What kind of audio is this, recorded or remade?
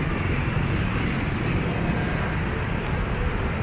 recorded